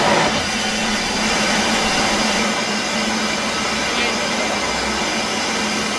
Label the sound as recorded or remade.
recorded